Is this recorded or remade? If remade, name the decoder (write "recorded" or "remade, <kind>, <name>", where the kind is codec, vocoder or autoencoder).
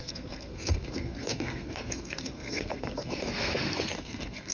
remade, codec, SNAC